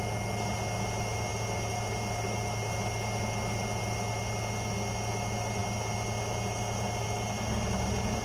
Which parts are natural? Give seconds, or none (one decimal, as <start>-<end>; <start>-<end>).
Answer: 0.0-8.2